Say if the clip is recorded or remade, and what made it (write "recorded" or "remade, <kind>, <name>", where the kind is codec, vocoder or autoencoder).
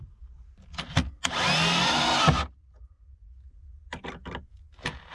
recorded